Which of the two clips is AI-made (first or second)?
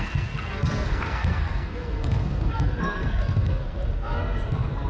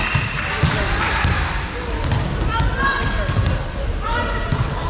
first